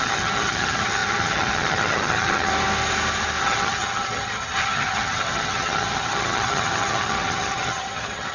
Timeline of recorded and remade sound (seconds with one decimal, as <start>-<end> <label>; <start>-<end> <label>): 0.0-2.5 remade; 2.5-3.4 recorded; 3.4-8.3 remade